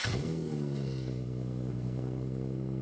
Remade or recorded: remade